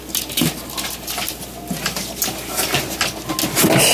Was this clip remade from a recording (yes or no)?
no